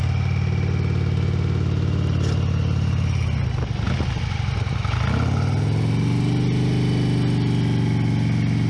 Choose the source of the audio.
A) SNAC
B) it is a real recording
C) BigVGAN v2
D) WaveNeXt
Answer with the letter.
B